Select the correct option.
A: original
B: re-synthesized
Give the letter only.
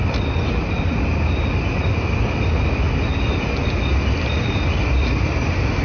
A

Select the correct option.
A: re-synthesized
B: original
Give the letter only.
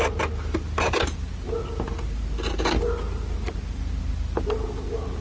B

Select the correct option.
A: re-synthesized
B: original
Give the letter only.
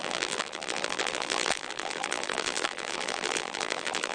A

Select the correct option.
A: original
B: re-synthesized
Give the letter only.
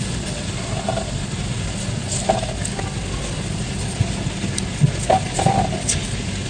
A